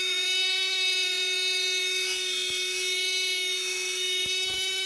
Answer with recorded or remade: remade